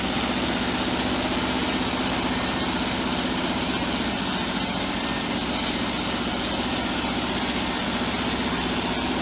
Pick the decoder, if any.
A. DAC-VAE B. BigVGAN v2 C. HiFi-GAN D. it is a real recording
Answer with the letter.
D